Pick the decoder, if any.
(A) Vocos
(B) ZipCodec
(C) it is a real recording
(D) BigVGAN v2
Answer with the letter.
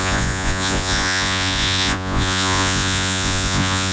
A